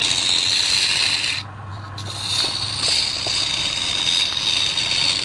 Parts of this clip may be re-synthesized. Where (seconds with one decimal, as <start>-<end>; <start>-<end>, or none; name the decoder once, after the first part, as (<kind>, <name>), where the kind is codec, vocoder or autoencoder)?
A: none